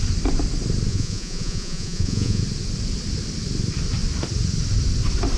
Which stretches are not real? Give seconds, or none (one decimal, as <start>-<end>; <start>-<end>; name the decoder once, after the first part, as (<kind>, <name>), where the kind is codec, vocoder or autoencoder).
0.9-2.4 (vocoder, Vocos)